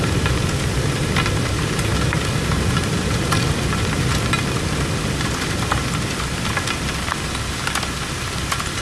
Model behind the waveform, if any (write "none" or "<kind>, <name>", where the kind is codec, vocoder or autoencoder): none